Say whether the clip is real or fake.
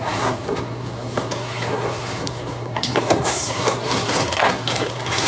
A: fake